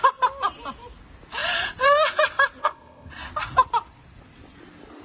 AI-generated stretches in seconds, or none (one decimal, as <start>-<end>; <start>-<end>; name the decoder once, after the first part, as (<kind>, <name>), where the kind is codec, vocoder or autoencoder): 2.6-3.1 (codec, ZipCodec)